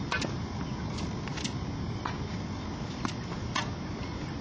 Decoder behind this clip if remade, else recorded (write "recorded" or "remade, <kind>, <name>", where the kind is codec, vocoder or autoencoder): recorded